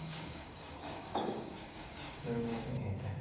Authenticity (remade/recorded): remade